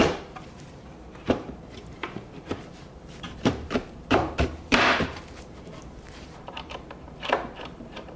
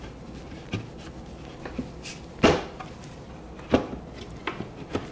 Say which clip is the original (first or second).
second